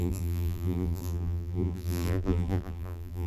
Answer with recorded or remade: remade